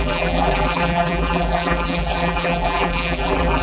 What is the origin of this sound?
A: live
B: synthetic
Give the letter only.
B